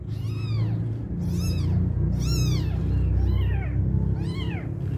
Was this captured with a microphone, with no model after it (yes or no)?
yes